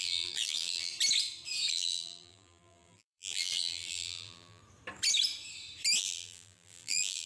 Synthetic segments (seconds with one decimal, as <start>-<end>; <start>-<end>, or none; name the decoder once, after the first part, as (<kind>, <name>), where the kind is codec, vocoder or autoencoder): 0.0-0.9 (vocoder, BigVGAN v2); 1.7-4.6; 6.0-7.3